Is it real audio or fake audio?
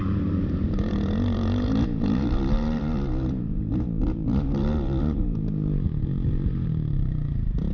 fake